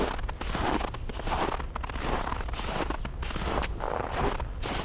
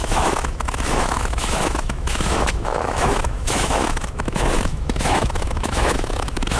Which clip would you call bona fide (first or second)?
first